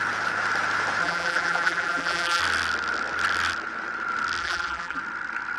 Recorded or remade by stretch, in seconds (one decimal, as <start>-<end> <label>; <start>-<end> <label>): 0.0-1.0 recorded; 1.0-2.4 remade; 2.4-4.4 recorded; 4.4-5.0 remade; 5.0-5.6 recorded